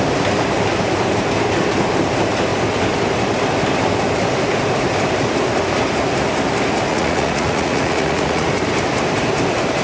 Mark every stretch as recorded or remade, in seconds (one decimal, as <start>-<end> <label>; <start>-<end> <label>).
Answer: 0.0-6.9 recorded; 6.9-8.5 remade; 8.5-9.8 recorded